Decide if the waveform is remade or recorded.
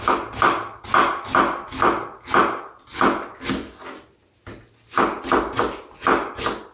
recorded